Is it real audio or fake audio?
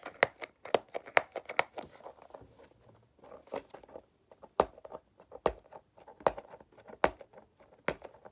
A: real